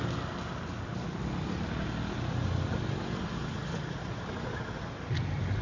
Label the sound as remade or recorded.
recorded